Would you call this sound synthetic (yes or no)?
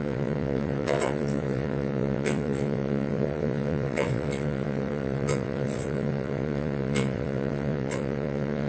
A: yes